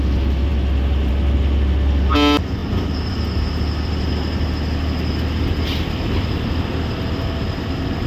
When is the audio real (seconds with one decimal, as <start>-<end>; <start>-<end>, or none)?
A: 0.0-8.1